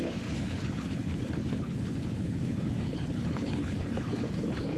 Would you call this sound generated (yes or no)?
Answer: yes